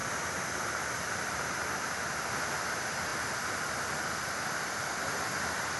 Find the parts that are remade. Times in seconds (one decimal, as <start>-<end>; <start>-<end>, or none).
0.0-1.4; 3.1-4.0